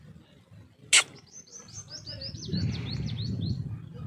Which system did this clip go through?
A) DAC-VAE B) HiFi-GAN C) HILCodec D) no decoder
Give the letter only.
D